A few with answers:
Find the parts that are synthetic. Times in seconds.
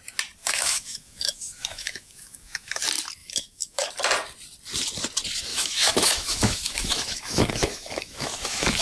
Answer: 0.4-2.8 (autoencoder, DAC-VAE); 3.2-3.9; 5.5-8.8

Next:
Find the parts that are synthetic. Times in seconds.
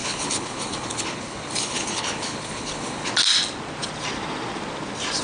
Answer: 0.0-3.1 (codec, HILCodec)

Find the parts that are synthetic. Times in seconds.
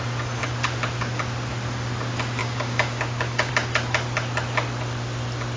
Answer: 2.4-3.5 (codec, DAC)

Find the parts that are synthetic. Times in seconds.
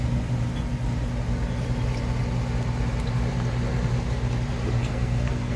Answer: 4.8-5.6 (codec, SNAC)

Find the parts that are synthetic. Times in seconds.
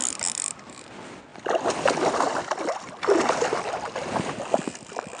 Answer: none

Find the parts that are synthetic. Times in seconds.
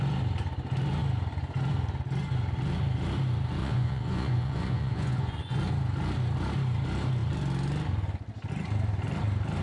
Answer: 3.6-5.6 (vocoder, Vocos)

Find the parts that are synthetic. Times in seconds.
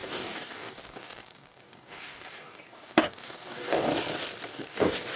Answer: 0.0-3.9 (codec, DAC); 4.5-5.2